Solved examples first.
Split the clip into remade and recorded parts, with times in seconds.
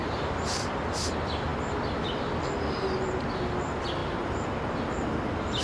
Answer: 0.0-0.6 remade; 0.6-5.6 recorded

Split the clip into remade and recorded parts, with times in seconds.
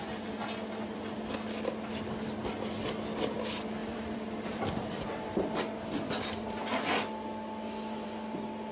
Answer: 0.0-3.8 recorded; 3.8-5.6 remade; 5.6-8.7 recorded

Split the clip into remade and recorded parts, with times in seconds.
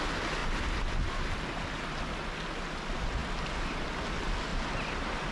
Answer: 0.0-0.4 recorded; 0.4-2.0 remade; 2.0-5.3 recorded